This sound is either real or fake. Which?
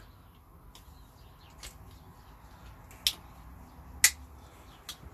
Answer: real